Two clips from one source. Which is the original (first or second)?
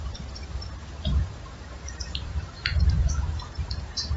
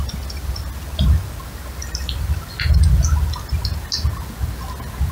second